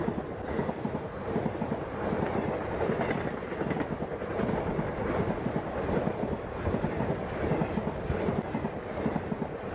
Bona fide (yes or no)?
yes